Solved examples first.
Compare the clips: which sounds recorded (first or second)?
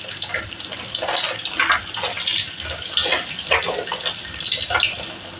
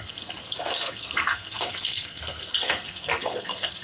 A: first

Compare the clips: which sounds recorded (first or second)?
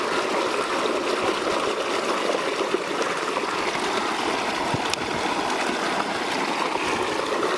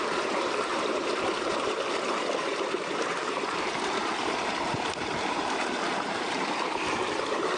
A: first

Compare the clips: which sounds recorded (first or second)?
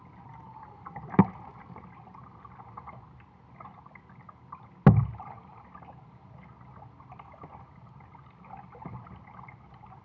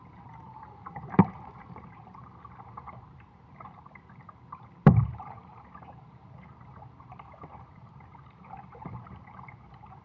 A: first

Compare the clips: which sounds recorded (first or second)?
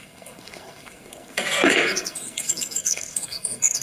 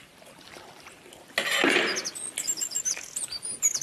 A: second